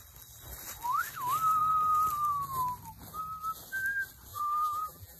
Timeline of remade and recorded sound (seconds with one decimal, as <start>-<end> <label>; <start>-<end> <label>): 0.0-4.3 recorded; 4.3-5.2 remade